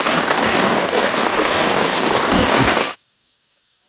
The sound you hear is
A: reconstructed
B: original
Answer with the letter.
A